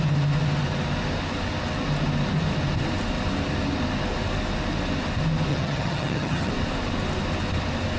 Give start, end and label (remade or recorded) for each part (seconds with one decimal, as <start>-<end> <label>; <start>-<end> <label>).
0.0-5.5 recorded; 5.5-6.5 remade; 6.5-8.0 recorded